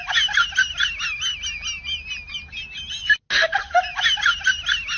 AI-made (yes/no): no